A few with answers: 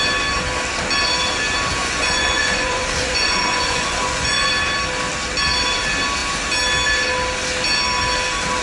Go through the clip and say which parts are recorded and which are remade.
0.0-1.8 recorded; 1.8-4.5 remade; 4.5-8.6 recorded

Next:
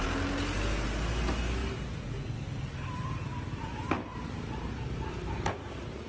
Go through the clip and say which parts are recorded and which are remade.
0.0-6.1 recorded

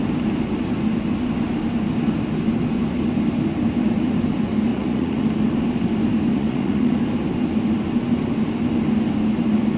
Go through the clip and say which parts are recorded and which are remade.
0.0-4.7 recorded; 4.7-5.2 remade; 5.2-6.3 recorded; 6.3-7.0 remade; 7.0-9.8 recorded

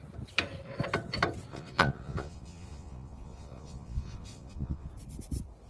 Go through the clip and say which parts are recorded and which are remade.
0.0-1.5 recorded; 1.5-4.9 remade; 4.9-5.7 recorded

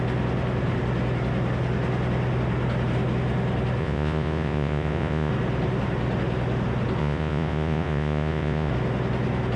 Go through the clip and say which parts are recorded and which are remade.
0.0-3.8 recorded; 3.8-5.3 remade; 5.3-7.0 recorded; 7.0-8.7 remade; 8.7-9.6 recorded

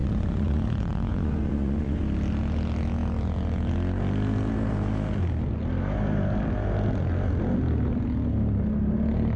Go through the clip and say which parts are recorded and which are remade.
0.0-2.0 remade; 2.0-9.4 recorded